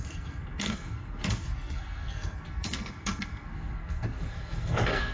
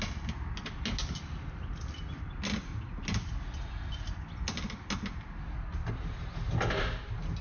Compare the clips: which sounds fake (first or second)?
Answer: first